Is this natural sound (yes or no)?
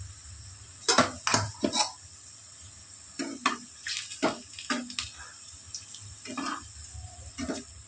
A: yes